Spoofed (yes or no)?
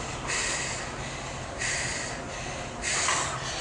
no